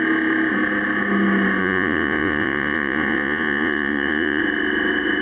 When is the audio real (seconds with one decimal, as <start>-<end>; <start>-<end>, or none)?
0.0-1.6; 4.4-5.2